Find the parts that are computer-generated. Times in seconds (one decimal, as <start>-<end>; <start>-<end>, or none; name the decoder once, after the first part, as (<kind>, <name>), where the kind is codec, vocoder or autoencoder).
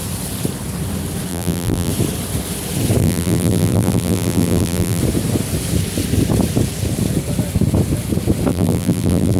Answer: 1.3-1.9 (vocoder, BigVGAN v2); 3.0-5.0; 8.5-9.4